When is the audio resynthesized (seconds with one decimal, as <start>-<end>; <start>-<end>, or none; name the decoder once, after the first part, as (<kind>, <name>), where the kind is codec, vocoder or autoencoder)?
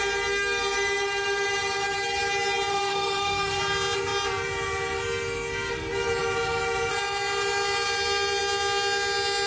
2.7-3.6 (autoencoder, DAC-VAE)